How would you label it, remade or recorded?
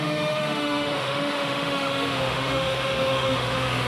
remade